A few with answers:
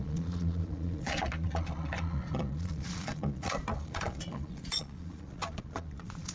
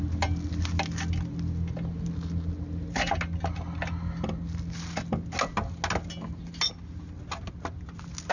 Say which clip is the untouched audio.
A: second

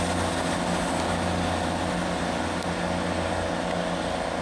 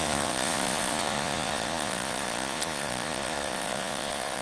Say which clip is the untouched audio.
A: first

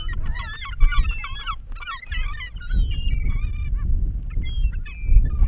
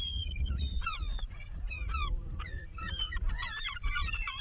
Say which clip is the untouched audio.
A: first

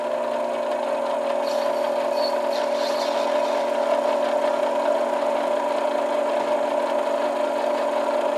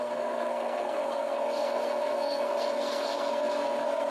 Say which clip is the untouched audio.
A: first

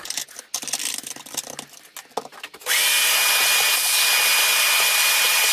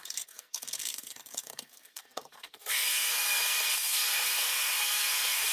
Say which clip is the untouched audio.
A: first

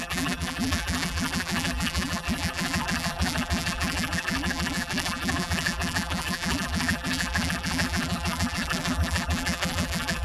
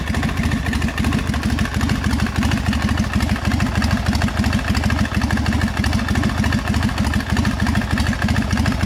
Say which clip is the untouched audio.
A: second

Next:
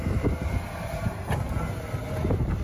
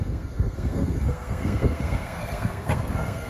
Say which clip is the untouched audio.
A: first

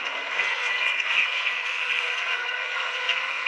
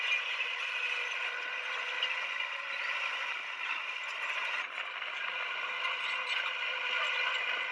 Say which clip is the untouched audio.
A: second